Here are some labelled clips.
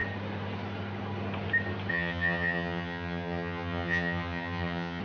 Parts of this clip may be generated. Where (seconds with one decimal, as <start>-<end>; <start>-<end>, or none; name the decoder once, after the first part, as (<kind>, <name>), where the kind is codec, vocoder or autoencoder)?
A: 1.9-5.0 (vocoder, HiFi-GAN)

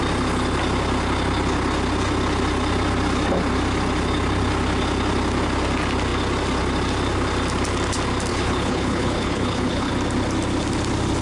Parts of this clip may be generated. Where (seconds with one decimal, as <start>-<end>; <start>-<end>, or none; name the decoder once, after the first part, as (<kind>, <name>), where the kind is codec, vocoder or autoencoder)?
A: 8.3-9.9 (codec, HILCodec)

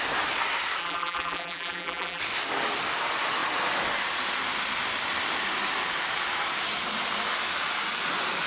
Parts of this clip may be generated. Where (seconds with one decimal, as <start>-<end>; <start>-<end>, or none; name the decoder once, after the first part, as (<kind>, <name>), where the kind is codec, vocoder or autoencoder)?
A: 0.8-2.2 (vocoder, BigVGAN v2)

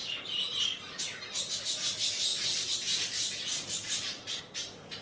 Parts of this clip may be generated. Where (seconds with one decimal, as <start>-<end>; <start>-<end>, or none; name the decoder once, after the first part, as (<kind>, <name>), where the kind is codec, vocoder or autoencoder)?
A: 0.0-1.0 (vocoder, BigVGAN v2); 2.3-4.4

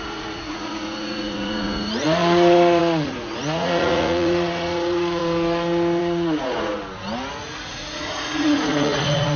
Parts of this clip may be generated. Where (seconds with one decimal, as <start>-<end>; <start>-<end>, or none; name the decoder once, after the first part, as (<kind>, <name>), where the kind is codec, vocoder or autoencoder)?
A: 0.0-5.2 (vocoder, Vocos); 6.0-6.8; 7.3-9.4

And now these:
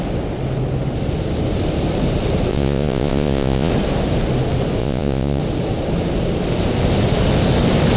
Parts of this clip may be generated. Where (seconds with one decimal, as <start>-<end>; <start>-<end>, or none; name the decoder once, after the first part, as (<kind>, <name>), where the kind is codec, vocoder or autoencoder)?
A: 2.5-3.7 (vocoder, Vocos); 4.8-5.4